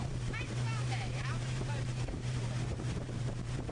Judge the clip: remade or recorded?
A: remade